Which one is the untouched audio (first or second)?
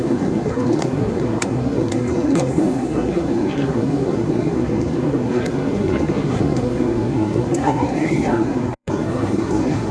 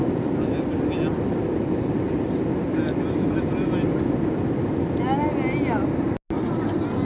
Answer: second